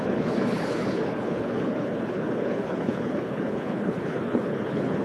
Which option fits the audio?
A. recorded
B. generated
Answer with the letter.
B